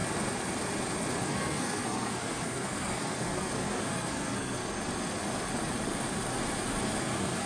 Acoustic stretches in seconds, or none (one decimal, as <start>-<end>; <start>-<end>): 0.0-1.2; 4.6-7.0